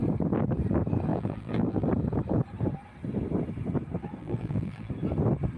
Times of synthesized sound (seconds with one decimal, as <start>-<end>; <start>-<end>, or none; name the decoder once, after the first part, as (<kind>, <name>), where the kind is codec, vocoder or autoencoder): 1.1-1.9 (vocoder, BigVGAN v2); 4.2-4.9